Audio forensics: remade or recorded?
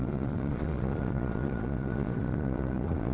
remade